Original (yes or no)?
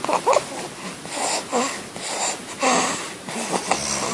yes